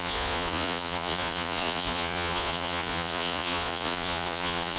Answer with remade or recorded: remade